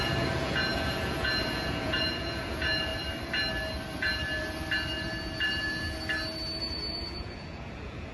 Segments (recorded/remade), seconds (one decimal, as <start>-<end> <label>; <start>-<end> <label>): 0.0-2.9 remade; 2.9-6.6 recorded; 6.6-8.1 remade